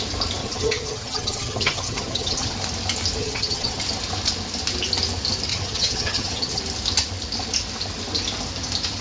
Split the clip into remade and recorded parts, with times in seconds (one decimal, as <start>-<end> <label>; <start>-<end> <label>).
0.0-0.4 recorded; 0.4-2.5 remade; 2.5-3.2 recorded; 3.2-3.8 remade; 3.8-5.5 recorded; 5.5-6.6 remade; 6.6-9.0 recorded